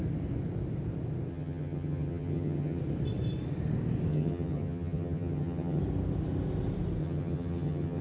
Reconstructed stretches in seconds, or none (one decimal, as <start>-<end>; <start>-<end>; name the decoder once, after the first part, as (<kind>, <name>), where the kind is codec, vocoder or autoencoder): 1.3-2.8 (vocoder, HiFi-GAN); 4.1-5.8; 7.0-8.0